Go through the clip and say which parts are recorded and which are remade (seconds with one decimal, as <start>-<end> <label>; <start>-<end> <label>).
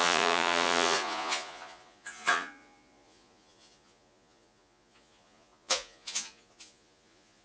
0.0-7.4 remade